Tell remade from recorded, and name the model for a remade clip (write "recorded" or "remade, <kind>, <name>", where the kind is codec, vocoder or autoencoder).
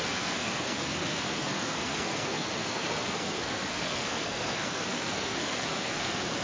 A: remade, codec, SNAC